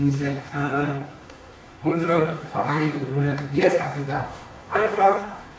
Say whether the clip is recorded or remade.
remade